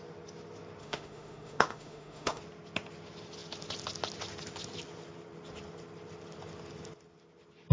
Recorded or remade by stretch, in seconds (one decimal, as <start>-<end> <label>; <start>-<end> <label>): 0.0-0.8 recorded; 0.8-2.4 remade; 2.4-7.7 recorded